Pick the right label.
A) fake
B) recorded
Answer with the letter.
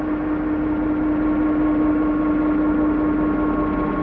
B